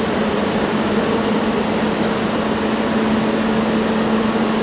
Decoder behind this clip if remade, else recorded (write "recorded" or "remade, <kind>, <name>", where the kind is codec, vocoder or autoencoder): recorded